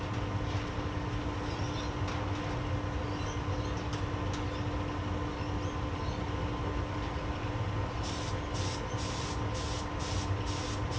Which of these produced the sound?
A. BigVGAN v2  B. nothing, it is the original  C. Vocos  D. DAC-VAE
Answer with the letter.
B